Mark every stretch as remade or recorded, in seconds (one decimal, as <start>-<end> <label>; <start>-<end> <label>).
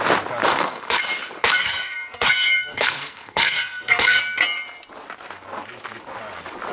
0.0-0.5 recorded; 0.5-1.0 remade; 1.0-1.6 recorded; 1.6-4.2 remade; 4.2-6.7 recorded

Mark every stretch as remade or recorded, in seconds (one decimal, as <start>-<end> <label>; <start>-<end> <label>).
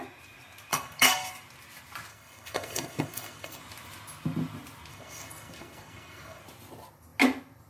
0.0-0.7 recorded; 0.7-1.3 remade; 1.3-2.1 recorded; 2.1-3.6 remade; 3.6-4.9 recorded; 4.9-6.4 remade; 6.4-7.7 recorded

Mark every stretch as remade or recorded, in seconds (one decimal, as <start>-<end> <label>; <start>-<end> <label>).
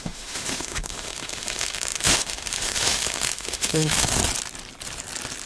0.0-4.2 remade; 4.2-5.5 recorded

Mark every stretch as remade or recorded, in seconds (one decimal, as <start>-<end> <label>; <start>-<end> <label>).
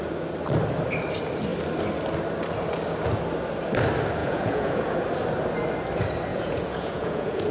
0.0-4.2 recorded; 4.2-5.0 remade; 5.0-6.3 recorded; 6.3-7.5 remade